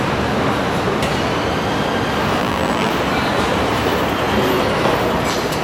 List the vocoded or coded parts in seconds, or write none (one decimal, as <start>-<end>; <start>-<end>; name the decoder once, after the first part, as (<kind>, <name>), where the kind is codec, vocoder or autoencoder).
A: 2.4-2.9 (vocoder, BigVGAN v2)